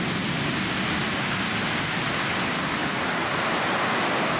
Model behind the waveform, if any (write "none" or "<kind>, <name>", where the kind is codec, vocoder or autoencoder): none